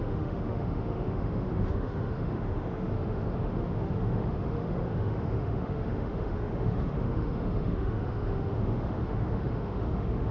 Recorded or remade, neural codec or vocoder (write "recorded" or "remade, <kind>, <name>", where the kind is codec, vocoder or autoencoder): remade, autoencoder, DAC-VAE